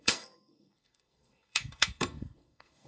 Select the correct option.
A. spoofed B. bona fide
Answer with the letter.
A